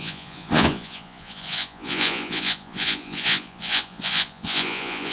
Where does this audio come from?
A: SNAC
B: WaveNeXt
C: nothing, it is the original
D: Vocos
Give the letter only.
D